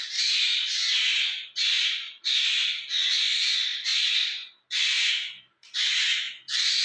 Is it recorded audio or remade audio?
recorded